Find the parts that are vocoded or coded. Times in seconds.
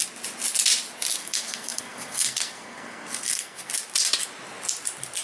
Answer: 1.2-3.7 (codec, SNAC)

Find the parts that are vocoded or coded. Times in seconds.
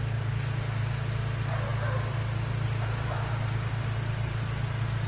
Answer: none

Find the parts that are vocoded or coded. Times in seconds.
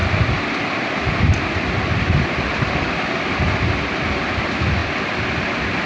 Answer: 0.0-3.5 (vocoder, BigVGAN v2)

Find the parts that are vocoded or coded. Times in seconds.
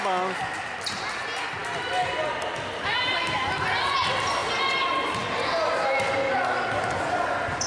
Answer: none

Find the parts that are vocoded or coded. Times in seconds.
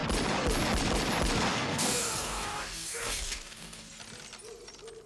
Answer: 1.5-3.9 (codec, DAC)